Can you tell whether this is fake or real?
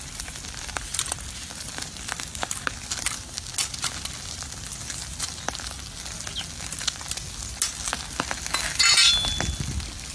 real